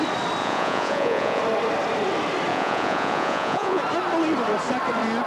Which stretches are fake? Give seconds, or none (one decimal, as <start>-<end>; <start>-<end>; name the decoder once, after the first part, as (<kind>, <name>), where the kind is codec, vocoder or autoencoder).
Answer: 0.4-1.4 (vocoder, Vocos); 2.5-3.8